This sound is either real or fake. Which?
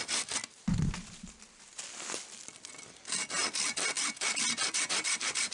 real